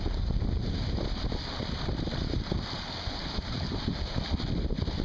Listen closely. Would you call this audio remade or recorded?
recorded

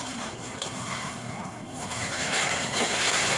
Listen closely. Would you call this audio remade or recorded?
remade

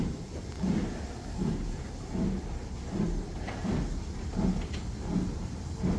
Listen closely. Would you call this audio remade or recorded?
recorded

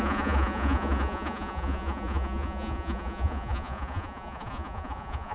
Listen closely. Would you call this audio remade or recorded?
remade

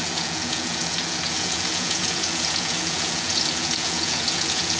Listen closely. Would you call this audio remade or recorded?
remade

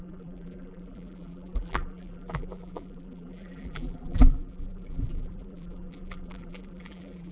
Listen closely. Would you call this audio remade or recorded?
remade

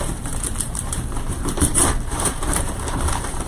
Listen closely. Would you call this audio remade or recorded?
remade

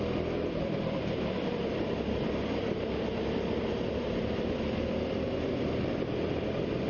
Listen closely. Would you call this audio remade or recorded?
recorded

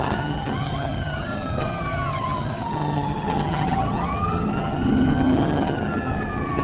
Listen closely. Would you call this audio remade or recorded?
remade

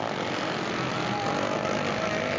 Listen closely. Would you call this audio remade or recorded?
recorded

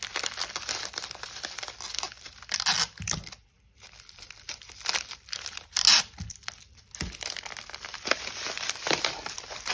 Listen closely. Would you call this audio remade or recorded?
recorded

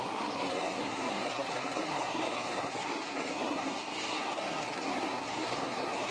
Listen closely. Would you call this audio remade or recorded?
remade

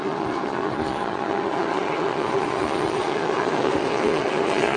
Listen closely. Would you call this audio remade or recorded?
remade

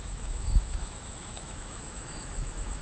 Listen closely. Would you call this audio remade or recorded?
remade